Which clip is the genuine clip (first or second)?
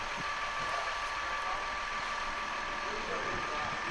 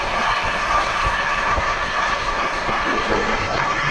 first